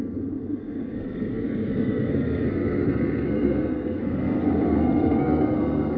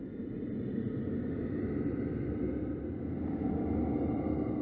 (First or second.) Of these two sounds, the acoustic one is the second